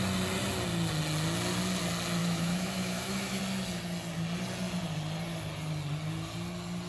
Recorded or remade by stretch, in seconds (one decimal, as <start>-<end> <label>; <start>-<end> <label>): 0.0-2.2 recorded; 2.2-3.4 remade; 3.4-6.9 recorded